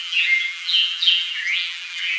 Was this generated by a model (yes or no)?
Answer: yes